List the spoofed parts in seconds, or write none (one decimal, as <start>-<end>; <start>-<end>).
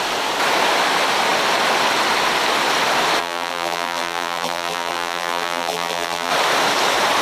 3.2-6.3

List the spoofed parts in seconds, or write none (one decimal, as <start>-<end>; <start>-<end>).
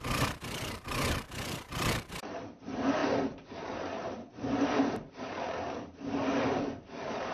0.0-7.3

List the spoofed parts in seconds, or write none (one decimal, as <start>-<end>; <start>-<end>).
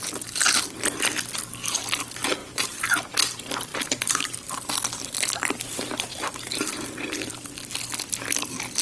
2.4-3.0; 3.7-4.7; 6.1-7.5